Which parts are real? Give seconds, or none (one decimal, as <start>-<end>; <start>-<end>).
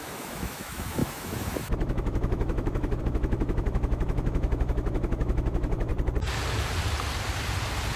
5.9-8.0